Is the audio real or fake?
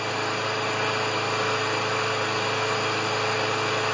real